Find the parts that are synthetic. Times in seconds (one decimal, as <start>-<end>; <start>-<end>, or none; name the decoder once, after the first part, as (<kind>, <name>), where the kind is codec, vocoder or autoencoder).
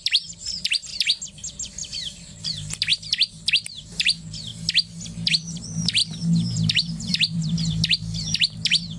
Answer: 0.0-2.9 (vocoder, BigVGAN v2); 3.5-4.5; 5.3-9.0